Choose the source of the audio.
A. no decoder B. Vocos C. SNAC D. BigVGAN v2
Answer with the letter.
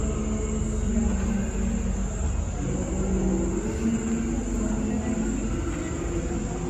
A